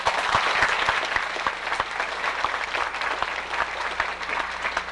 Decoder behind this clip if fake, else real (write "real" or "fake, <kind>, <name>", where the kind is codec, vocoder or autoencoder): real